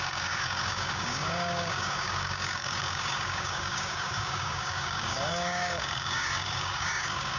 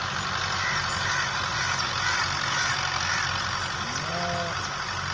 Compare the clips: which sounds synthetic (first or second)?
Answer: first